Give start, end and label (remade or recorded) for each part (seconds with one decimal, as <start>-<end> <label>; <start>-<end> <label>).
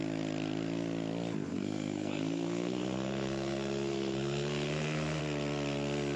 0.0-1.5 recorded; 1.5-5.2 remade; 5.2-6.2 recorded